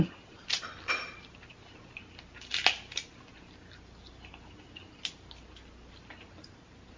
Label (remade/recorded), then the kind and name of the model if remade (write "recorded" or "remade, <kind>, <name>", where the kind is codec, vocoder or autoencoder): recorded